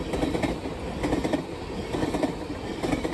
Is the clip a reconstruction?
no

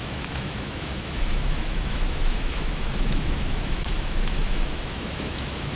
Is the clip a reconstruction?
yes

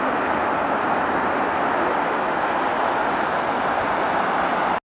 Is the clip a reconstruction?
no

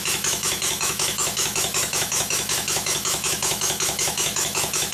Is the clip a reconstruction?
yes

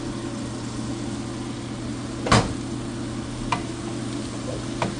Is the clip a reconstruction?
no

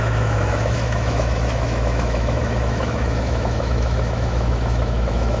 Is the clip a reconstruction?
yes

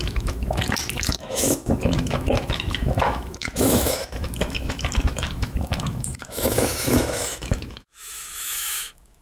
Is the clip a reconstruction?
yes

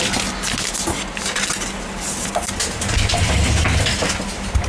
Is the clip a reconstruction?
no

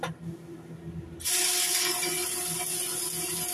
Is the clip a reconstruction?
no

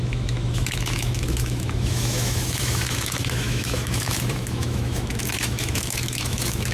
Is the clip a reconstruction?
yes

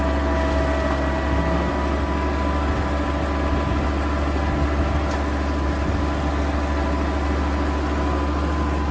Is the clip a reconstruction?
no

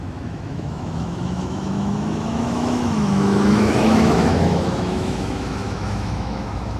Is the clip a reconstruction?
yes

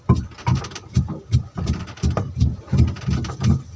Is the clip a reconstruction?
no